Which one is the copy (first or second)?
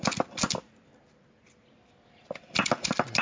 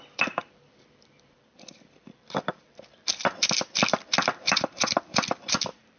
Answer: second